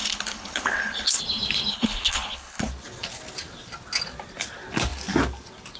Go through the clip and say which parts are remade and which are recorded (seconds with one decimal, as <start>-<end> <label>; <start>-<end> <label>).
0.0-1.2 remade; 1.2-1.7 recorded; 1.7-2.7 remade; 2.7-5.8 recorded